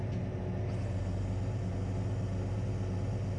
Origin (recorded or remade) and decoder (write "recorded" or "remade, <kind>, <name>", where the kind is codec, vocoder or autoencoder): recorded